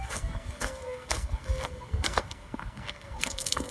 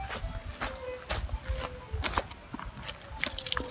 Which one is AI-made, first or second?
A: first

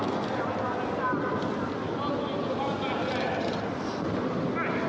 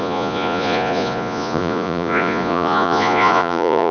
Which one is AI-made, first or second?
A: second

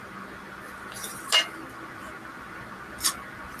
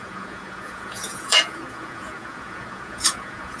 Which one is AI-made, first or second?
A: second